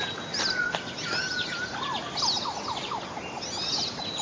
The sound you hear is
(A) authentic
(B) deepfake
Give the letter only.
A